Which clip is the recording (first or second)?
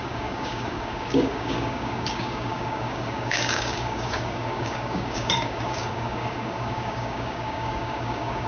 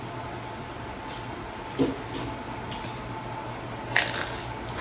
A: second